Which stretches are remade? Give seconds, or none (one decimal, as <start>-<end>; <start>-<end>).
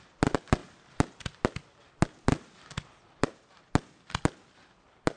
none